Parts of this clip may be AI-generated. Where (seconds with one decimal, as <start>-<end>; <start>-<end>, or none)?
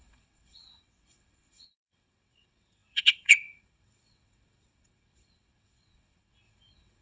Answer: 0.0-7.0